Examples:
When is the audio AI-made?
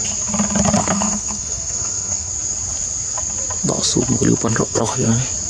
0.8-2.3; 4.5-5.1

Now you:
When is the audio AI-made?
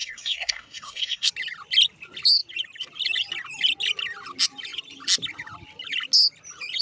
0.0-1.3